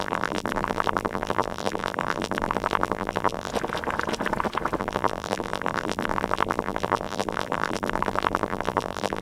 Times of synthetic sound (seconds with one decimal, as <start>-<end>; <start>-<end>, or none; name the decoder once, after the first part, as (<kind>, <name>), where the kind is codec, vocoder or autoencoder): 0.0-3.5 (vocoder, BigVGAN v2); 4.8-9.2